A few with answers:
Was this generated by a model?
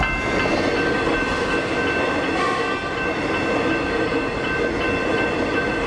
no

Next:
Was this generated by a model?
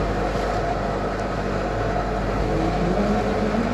no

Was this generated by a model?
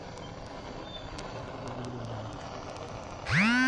no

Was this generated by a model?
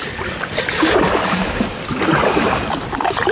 no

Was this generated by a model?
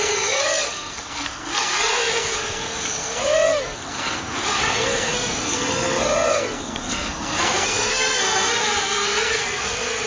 yes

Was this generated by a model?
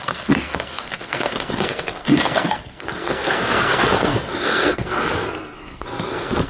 yes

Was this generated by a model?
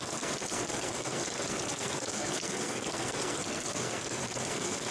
yes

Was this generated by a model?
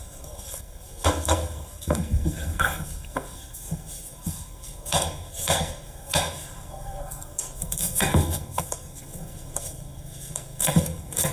yes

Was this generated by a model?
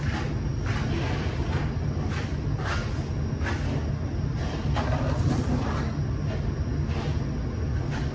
no